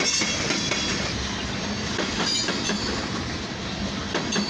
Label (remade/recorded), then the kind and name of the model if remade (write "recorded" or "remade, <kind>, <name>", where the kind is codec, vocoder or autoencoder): recorded